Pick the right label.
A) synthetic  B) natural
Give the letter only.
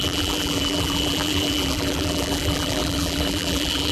A